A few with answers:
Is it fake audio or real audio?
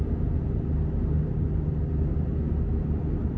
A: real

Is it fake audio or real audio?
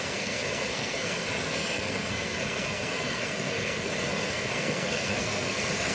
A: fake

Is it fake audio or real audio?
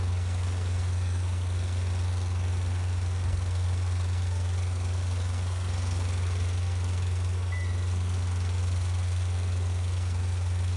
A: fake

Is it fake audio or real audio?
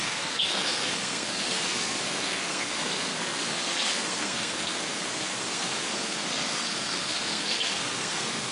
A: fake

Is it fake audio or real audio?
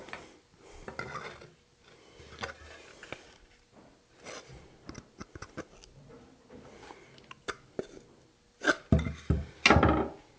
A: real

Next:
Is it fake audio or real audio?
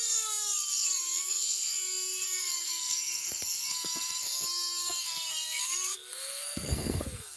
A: fake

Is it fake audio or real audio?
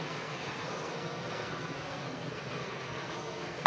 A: fake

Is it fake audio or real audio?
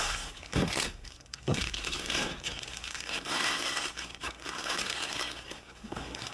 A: fake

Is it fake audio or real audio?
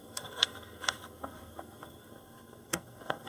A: fake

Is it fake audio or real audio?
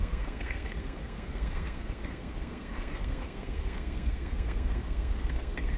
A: fake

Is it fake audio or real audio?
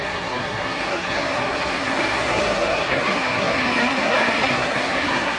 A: fake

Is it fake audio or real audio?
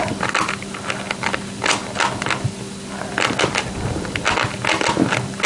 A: real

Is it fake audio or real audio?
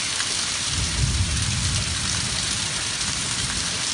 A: real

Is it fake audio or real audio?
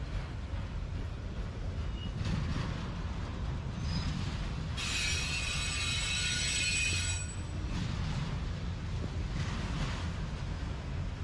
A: real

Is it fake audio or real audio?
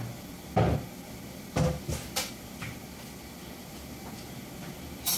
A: real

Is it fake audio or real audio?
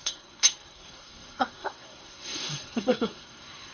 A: fake